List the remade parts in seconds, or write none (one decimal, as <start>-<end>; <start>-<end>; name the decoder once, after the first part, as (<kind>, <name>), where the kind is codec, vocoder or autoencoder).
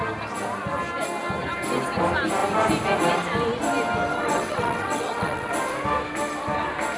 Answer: 4.1-5.5 (vocoder, WaveNeXt)